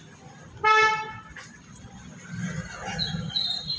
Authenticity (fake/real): real